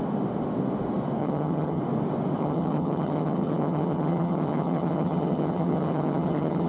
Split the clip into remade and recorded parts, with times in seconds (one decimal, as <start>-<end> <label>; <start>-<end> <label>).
0.0-1.2 recorded; 1.2-1.8 remade; 1.8-2.4 recorded; 2.4-6.7 remade